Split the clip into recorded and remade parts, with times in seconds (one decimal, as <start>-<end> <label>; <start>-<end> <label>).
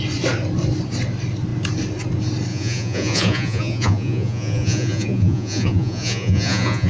0.0-2.5 recorded; 2.5-6.9 remade